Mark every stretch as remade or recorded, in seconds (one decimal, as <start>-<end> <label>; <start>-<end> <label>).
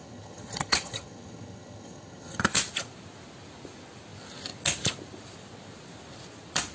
0.0-2.4 remade; 2.4-6.7 recorded